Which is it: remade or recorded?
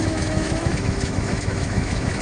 remade